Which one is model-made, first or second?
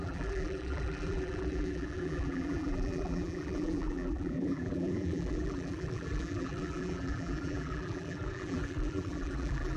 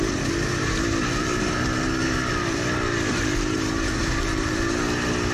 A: first